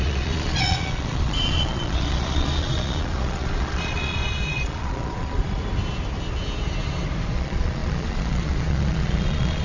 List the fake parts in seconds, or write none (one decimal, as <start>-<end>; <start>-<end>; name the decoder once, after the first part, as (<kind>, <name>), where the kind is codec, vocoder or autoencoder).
0.0-5.6 (vocoder, Vocos); 7.3-9.6